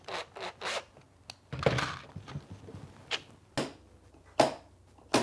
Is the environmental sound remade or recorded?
recorded